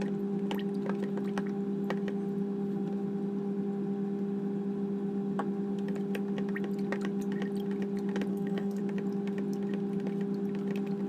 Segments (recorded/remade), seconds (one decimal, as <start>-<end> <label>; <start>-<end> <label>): 0.0-8.3 recorded; 8.3-8.8 remade; 8.8-11.1 recorded